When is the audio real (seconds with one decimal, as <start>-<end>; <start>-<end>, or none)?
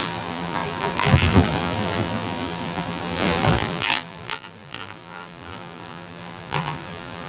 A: none